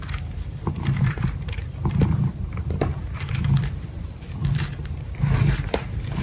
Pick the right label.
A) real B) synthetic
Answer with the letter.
B